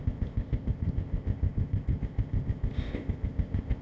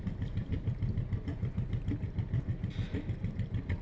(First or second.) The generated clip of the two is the first